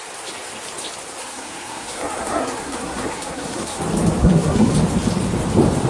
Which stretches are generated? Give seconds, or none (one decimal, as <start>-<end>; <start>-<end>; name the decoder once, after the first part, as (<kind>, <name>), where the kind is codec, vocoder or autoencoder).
1.2-3.8 (codec, SNAC); 4.2-4.7